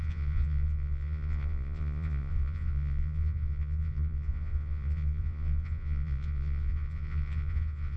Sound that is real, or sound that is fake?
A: fake